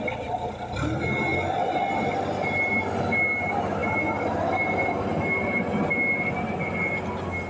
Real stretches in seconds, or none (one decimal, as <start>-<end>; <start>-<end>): 0.0-7.5